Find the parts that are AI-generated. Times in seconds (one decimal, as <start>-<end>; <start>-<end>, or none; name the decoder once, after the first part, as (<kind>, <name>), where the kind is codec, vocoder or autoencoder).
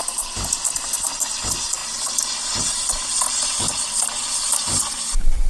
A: 0.7-1.8 (vocoder, BigVGAN v2); 2.6-5.5